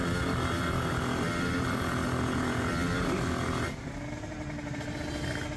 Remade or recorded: recorded